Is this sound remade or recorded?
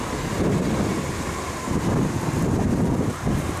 recorded